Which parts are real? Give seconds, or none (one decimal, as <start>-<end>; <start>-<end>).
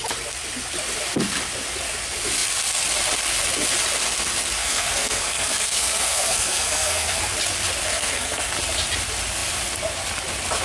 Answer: 0.0-4.6; 7.2-7.9; 8.5-10.6